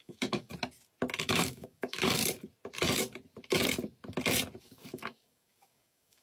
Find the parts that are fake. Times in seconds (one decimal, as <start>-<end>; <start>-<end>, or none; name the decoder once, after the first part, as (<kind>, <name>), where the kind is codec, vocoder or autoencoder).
0.0-0.5 (codec, DAC); 1.2-2.2; 4.6-6.2